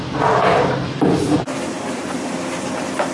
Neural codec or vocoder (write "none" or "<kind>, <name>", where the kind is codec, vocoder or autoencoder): none